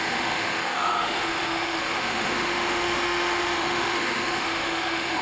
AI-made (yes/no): yes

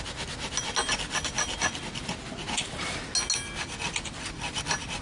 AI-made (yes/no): no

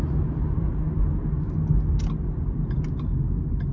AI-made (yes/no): no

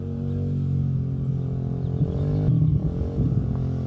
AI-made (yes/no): no